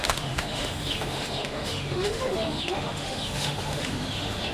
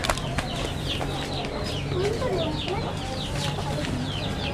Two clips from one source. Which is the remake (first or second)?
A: first